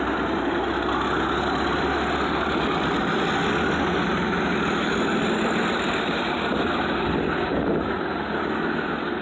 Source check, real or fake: real